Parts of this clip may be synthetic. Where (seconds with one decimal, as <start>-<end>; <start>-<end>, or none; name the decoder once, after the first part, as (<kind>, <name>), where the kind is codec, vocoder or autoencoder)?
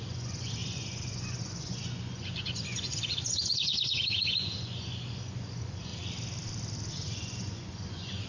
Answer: 0.0-5.9 (vocoder, Vocos); 6.9-8.3